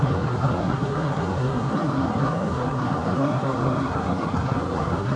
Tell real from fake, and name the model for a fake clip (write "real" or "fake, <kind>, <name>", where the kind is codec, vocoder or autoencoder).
fake, codec, SNAC